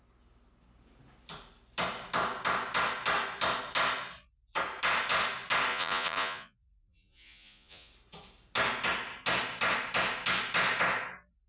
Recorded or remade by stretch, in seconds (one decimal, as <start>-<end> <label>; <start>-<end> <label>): 0.0-5.7 recorded; 5.7-7.9 remade; 7.9-11.5 recorded